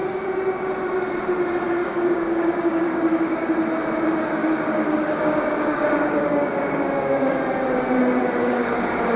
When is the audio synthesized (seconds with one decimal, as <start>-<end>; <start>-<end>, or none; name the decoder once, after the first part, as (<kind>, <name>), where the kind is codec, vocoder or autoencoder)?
1.8-3.5 (codec, DAC); 4.4-7.4; 8.4-9.2